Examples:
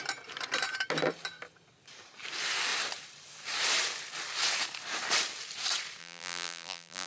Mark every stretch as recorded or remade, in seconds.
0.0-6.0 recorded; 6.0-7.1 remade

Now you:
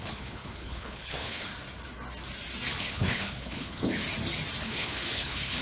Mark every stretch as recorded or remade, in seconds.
0.0-1.5 remade; 1.5-2.8 recorded; 2.8-4.0 remade; 4.0-4.6 recorded; 4.6-5.6 remade